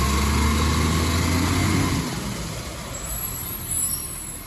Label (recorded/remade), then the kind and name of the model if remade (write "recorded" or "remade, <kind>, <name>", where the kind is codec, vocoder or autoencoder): recorded